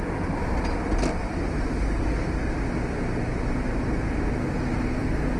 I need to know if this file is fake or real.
real